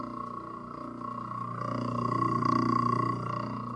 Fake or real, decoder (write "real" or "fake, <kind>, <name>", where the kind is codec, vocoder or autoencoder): real